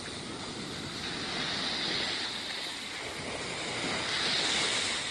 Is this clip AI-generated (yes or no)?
no